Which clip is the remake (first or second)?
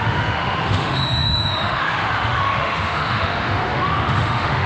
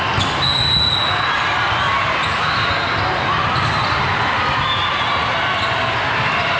first